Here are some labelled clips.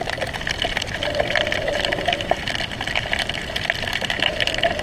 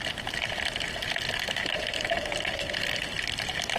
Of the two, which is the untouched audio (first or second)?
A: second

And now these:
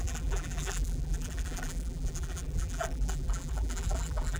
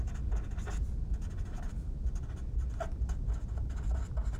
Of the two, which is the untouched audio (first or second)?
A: second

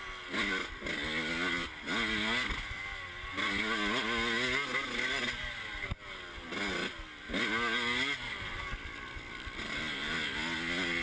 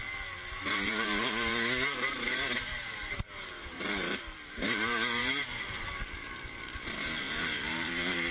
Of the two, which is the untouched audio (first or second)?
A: first